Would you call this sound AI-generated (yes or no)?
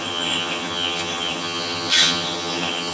yes